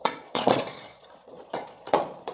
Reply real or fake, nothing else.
fake